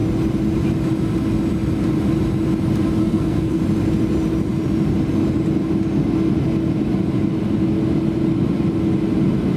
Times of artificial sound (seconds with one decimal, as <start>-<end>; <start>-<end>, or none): 3.0-3.6